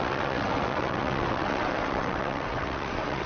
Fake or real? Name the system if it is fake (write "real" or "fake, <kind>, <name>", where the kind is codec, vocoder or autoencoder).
fake, vocoder, WaveNeXt